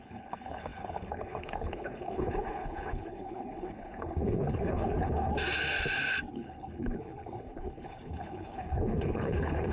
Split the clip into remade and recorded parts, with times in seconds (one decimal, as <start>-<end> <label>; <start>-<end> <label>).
0.0-5.3 remade; 5.3-6.3 recorded; 6.3-9.7 remade